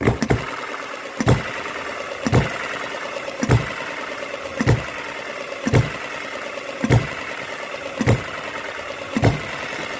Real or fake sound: real